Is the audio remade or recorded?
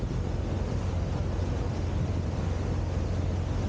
recorded